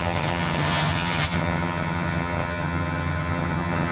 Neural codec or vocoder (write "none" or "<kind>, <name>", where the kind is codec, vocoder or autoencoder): vocoder, HiFi-GAN